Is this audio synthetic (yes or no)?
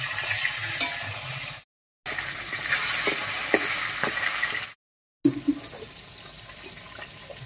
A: no